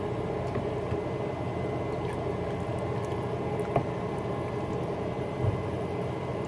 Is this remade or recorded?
recorded